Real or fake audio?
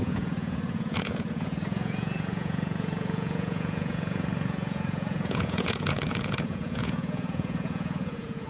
fake